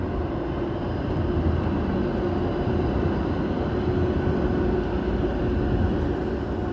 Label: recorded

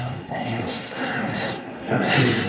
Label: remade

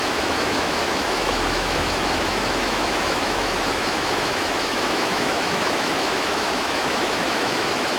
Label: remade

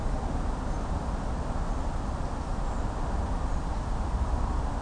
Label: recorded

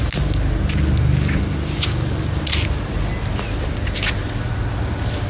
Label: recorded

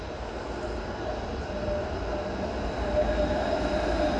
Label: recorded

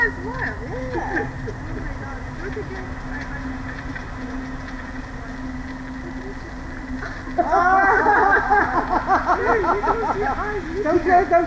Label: recorded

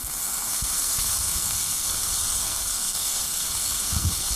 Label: remade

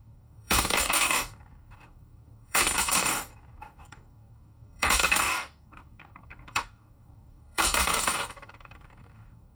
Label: remade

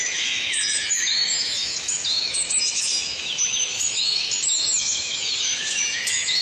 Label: remade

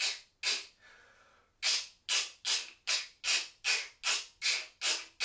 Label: recorded